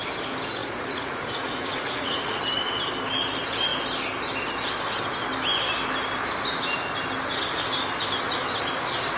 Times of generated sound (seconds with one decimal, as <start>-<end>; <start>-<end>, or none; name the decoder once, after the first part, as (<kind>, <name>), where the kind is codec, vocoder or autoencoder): 0.6-2.4 (vocoder, Vocos)

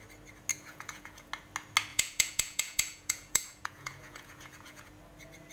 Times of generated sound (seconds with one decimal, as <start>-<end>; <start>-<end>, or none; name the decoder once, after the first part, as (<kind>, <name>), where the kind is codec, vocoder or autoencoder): 0.5-1.3 (vocoder, Vocos); 1.9-4.9

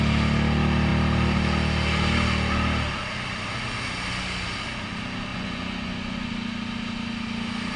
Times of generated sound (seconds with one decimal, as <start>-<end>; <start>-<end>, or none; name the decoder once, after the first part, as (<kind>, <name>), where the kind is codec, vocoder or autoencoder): 5.3-6.3 (vocoder, Vocos)